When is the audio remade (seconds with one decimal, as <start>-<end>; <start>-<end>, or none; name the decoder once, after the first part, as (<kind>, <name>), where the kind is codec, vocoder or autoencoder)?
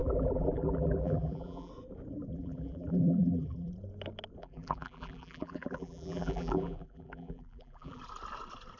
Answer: 0.0-1.7 (vocoder, BigVGAN v2); 2.3-3.7; 4.4-8.0